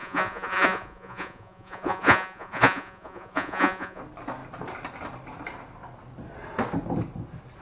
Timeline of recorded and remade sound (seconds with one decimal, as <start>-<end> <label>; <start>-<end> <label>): 0.0-4.0 remade; 4.0-7.6 recorded